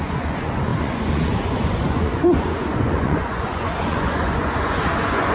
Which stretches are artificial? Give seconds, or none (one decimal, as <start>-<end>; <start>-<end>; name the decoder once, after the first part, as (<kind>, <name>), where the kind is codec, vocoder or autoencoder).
0.0-5.3 (vocoder, Vocos)